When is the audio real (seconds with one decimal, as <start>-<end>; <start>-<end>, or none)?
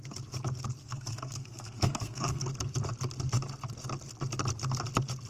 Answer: 0.0-0.8; 2.5-5.3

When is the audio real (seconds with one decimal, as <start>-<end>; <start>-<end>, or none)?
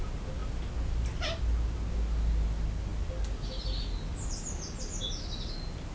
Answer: 0.0-5.9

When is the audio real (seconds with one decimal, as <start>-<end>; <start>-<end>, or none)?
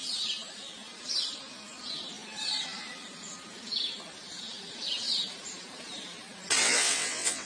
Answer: 0.0-6.6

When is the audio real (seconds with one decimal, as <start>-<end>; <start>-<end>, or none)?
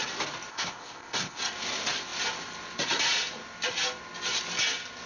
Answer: 0.0-0.5; 1.4-5.1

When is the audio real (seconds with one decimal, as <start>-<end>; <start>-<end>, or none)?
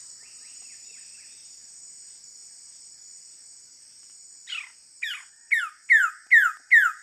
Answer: 0.0-7.0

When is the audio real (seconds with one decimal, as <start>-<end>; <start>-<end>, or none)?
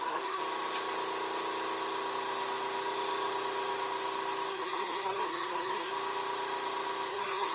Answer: 0.4-4.5; 5.9-7.1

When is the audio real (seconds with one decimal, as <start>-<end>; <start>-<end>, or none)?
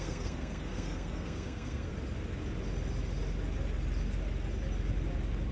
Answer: 1.9-5.5